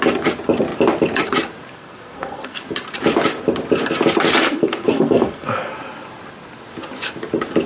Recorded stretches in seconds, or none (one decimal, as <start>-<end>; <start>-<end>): 0.0-1.7; 2.6-4.4; 5.7-7.7